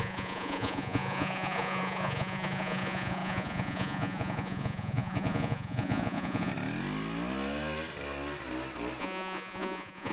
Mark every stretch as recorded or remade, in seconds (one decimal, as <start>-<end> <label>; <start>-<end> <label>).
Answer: 0.0-6.5 remade; 6.5-9.0 recorded; 9.0-10.1 remade